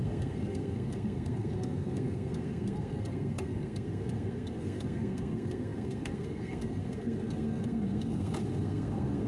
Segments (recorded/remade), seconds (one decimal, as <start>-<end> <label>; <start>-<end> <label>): 0.0-9.3 remade